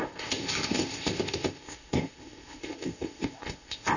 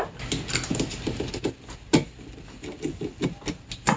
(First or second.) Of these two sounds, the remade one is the first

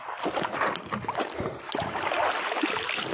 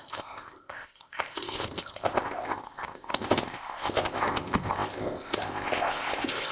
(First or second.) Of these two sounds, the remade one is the second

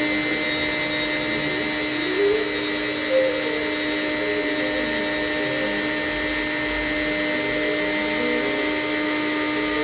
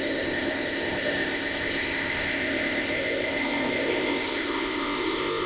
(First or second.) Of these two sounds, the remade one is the second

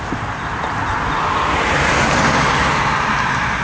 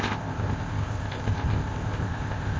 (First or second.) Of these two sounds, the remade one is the second